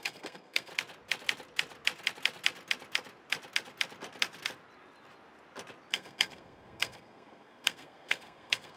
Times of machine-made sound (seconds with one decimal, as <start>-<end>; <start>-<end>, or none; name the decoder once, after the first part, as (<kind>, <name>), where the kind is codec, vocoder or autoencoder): 0.0-0.7 (codec, SNAC); 5.9-8.8